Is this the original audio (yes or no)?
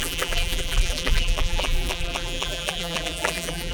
no